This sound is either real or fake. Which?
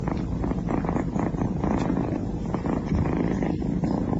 fake